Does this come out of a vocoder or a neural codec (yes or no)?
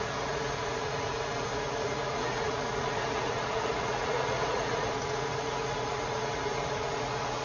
yes